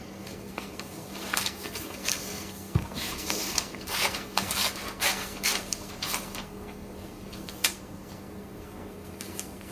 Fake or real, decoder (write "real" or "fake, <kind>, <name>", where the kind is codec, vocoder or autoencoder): fake, codec, SNAC